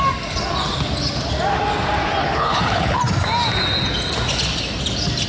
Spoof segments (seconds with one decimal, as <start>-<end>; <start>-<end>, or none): 2.2-3.0

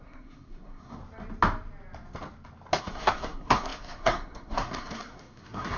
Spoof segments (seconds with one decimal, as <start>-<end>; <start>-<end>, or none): 0.0-1.0; 2.8-5.8